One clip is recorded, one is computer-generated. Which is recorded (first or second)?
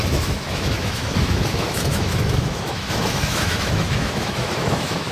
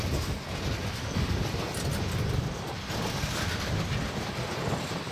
second